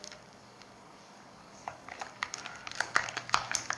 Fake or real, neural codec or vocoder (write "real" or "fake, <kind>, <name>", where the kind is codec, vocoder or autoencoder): fake, codec, DAC